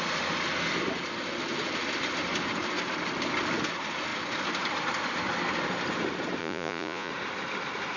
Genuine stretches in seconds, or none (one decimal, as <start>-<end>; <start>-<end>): 0.0-6.4; 7.1-8.0

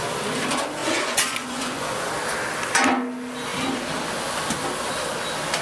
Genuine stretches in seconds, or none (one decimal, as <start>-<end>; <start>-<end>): 0.0-0.8; 2.1-5.6